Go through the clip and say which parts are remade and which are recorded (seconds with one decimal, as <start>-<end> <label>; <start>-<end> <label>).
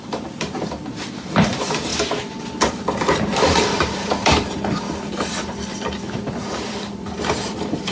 0.0-1.9 remade; 1.9-2.4 recorded; 2.4-7.9 remade